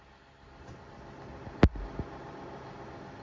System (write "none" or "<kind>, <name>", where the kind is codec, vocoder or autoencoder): none